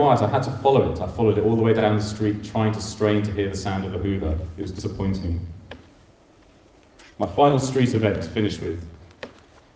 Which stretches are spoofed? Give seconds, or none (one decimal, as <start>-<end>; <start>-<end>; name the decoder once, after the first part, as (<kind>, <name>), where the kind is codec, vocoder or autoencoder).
5.2-9.8 (vocoder, Vocos)